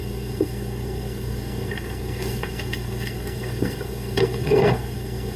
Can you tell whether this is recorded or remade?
remade